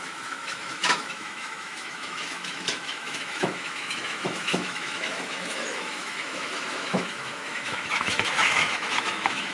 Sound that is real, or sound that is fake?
fake